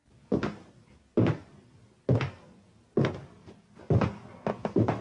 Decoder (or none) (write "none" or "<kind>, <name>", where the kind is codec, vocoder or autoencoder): none